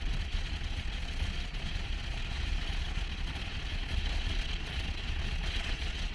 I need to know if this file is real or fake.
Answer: fake